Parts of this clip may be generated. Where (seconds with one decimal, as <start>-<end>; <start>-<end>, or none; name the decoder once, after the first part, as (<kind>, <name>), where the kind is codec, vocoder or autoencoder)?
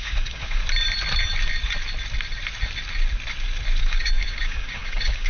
0.0-0.6 (codec, DAC); 3.8-5.3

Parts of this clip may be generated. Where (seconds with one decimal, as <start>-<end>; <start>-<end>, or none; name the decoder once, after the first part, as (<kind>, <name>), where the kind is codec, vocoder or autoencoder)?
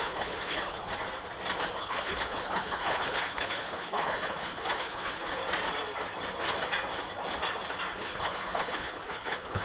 0.0-0.8 (codec, HILCodec); 1.8-5.4; 8.0-9.6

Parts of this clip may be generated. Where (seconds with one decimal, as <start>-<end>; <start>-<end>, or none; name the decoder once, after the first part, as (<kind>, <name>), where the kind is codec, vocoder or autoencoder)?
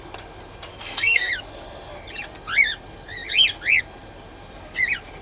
0.7-1.3 (codec, SNAC)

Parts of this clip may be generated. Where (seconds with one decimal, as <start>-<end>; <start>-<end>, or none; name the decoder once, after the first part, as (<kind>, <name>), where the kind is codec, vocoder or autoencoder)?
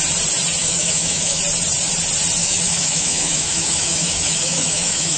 0.6-1.4 (autoencoder, DAC-VAE); 2.4-5.2